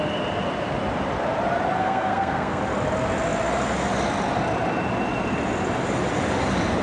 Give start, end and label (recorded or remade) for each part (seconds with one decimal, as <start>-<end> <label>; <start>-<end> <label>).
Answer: 0.0-1.8 recorded; 1.8-2.6 remade; 2.6-6.8 recorded